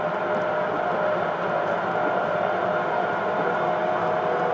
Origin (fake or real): real